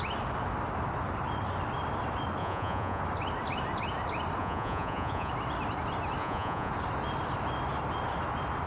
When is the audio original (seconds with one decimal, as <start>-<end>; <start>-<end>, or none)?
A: 0.0-2.4; 3.0-4.4; 5.3-6.2; 6.7-8.7